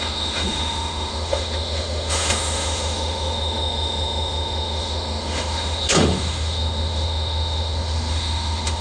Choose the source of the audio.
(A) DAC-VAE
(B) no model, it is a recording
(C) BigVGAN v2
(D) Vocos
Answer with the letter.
A